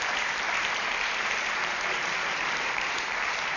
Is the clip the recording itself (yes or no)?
no